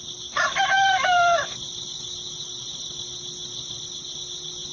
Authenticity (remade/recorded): recorded